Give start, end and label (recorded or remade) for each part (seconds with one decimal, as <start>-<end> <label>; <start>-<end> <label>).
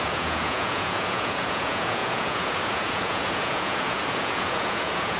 0.0-5.2 remade